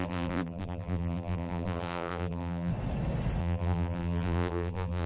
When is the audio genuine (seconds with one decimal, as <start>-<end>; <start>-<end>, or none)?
2.7-3.4